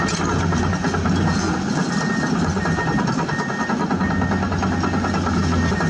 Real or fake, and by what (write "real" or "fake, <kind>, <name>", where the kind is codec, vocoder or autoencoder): real